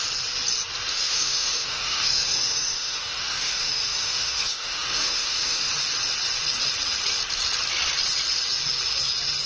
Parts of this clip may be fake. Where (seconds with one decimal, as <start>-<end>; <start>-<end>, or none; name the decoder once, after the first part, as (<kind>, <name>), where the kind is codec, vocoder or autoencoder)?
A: 0.9-5.7 (autoencoder, DAC-VAE)